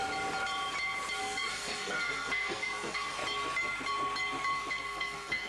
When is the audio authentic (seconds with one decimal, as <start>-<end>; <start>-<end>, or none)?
0.0-1.2; 3.2-4.7